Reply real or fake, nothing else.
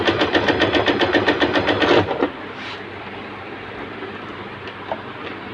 real